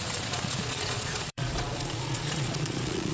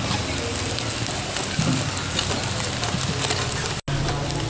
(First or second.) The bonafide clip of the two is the second